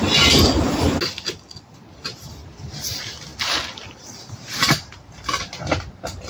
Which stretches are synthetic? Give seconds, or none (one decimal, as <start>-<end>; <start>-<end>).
none